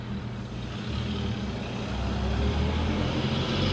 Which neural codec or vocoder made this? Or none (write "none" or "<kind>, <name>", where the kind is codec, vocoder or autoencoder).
none